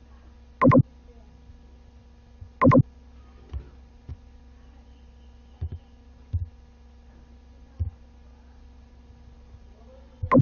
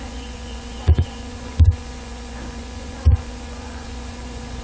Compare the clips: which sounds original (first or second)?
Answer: first